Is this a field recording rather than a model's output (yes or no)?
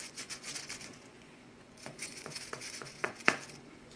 no